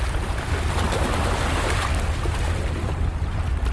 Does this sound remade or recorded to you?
recorded